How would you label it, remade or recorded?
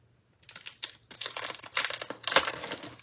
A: recorded